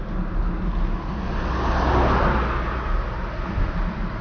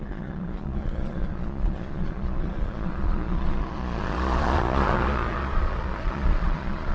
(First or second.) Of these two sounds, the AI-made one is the second